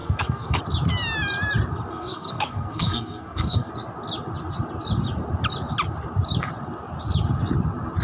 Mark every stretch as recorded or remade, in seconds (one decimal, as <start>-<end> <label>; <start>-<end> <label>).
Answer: 0.0-0.6 remade; 0.6-1.9 recorded; 1.9-3.7 remade; 3.7-8.0 recorded